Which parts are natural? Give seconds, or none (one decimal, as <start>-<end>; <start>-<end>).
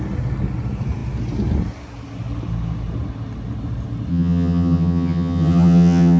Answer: 0.0-4.1